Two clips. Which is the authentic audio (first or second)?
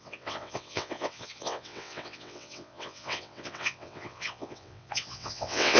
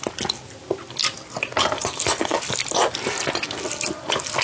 second